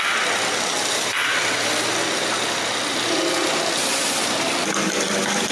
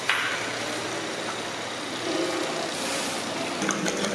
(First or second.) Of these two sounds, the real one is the first